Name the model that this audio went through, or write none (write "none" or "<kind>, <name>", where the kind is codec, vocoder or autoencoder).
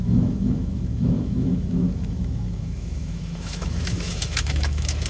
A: autoencoder, DAC-VAE